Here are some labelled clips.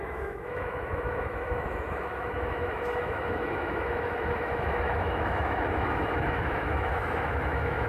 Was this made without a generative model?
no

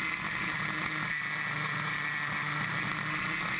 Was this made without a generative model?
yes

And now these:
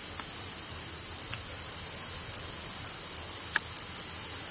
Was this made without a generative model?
yes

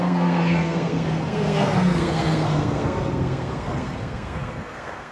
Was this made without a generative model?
no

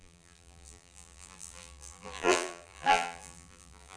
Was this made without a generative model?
no